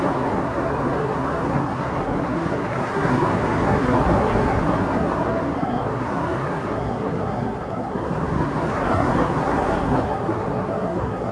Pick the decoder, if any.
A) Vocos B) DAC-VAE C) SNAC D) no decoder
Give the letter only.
C